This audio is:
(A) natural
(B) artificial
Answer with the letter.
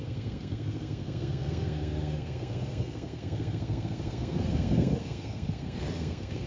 B